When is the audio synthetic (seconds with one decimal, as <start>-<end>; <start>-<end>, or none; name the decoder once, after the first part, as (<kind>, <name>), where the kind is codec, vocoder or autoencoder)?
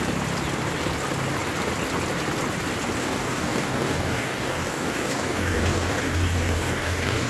3.0-7.3 (codec, DAC)